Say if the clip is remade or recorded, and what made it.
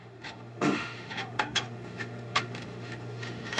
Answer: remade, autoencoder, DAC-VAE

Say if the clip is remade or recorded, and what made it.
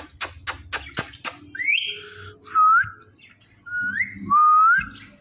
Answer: recorded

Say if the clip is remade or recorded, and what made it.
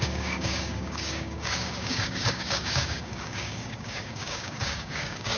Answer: remade, codec, DAC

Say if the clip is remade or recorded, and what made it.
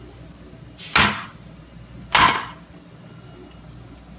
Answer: recorded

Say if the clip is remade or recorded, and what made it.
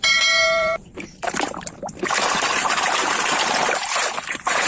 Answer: remade, vocoder, BigVGAN v2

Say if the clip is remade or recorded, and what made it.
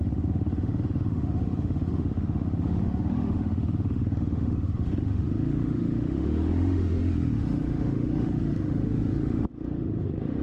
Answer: remade, autoencoder, DAC-VAE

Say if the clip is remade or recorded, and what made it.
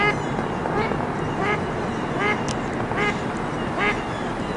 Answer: recorded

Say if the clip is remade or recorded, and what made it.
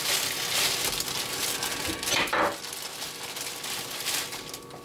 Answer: recorded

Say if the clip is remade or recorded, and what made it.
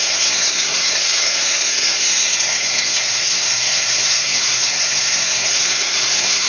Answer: remade, codec, SNAC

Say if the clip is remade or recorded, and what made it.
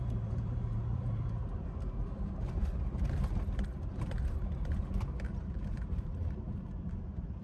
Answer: remade, vocoder, BigVGAN v2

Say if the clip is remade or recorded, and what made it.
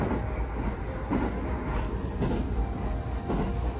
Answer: recorded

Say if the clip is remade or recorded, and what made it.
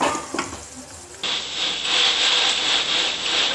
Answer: recorded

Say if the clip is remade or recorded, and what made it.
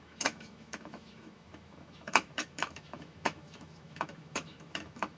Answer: remade, autoencoder, DAC-VAE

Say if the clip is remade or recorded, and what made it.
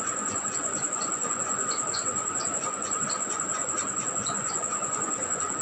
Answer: remade, vocoder, Vocos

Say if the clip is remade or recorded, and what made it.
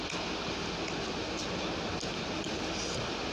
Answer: recorded